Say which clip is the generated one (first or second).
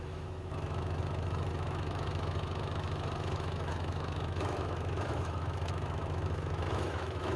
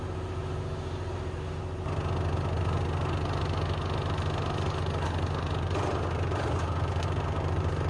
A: first